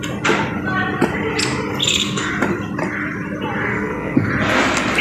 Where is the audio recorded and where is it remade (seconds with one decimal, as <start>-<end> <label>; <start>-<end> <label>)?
0.0-1.8 recorded; 1.8-2.3 remade; 2.3-3.7 recorded; 3.7-4.3 remade; 4.3-5.0 recorded